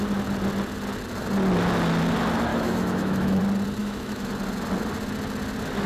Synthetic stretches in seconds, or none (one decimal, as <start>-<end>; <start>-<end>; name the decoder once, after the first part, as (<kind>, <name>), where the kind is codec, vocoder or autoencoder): 2.5-3.4 (autoencoder, DAC-VAE); 3.8-4.3